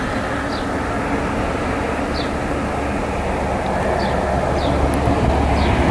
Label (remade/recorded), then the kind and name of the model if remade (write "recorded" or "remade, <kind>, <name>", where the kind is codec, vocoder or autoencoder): recorded